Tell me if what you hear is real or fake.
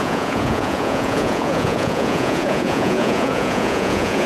fake